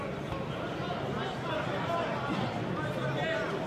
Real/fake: real